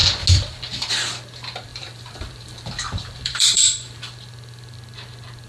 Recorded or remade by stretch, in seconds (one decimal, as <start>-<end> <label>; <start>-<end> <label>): 0.0-1.7 recorded; 1.7-4.0 remade; 4.0-5.5 recorded